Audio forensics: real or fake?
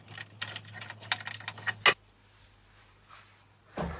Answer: real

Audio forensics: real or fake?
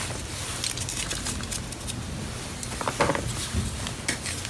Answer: real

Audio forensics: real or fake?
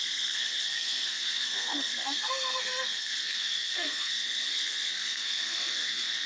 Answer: fake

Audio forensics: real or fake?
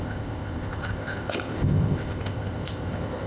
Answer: fake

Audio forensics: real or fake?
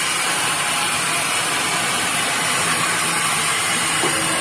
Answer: real